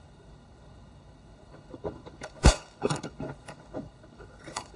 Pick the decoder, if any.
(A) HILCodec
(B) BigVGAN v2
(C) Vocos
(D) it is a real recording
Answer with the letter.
A